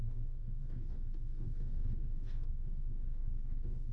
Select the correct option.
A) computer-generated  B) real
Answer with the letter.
A